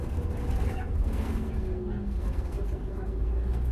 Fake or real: fake